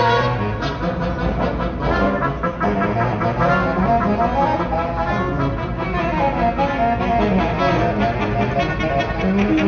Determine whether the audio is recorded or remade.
recorded